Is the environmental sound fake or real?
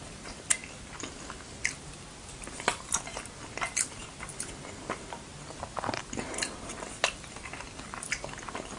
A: real